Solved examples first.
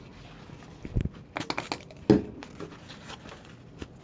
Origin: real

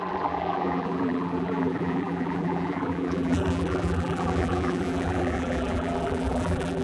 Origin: fake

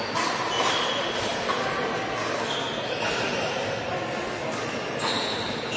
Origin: real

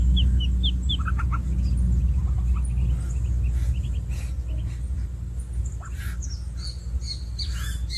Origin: real